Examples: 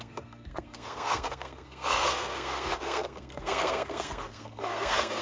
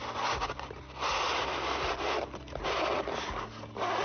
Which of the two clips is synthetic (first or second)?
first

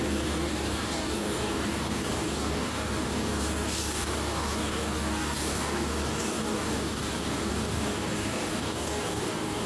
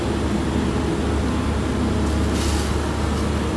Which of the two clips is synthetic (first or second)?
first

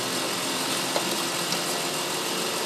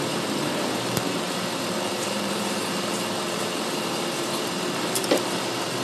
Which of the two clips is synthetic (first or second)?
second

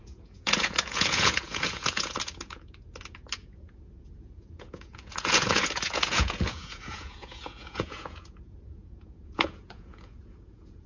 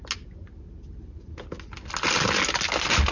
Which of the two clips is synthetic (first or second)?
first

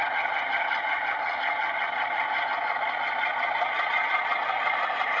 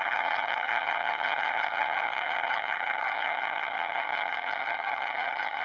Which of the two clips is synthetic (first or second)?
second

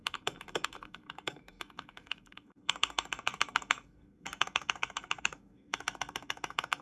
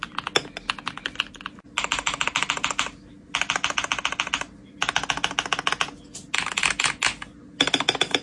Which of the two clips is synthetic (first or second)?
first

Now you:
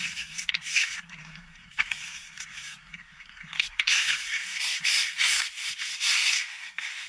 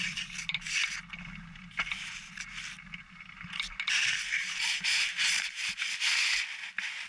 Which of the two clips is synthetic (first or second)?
first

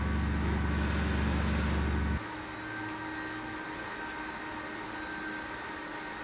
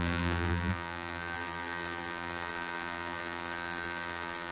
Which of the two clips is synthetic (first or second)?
second